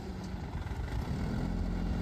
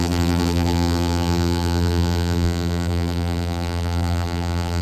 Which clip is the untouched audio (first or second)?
first